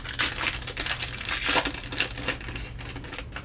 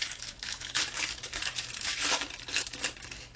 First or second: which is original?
first